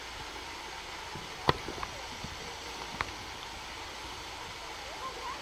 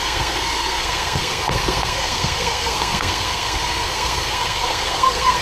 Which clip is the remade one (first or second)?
second